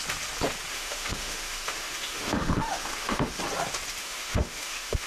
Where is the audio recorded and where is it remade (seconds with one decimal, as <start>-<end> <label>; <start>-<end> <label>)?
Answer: 0.0-0.7 recorded; 0.7-3.4 remade; 3.4-4.0 recorded; 4.0-5.1 remade